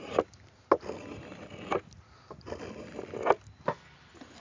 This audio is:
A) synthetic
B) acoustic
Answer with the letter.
B